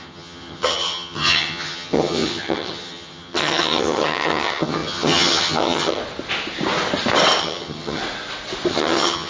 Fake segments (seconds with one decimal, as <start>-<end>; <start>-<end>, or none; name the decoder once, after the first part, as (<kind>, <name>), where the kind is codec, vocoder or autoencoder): 0.0-6.0 (vocoder, HiFi-GAN); 7.4-8.0; 8.7-9.3